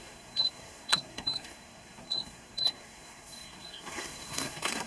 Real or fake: fake